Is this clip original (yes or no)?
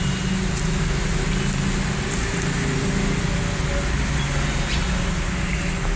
yes